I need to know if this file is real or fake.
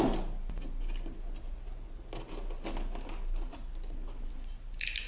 real